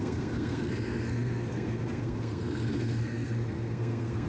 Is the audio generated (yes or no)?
yes